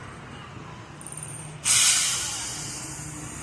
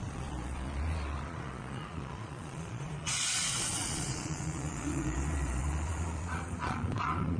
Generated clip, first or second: second